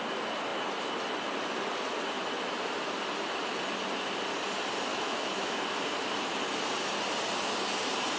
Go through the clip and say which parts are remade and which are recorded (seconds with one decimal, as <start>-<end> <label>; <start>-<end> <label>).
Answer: 0.0-4.9 recorded; 4.9-5.6 remade; 5.6-8.2 recorded